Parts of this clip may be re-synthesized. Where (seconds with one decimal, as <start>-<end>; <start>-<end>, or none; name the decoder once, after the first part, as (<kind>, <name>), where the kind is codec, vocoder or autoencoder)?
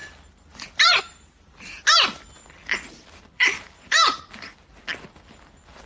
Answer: 0.0-1.0 (vocoder, BigVGAN v2); 2.4-5.9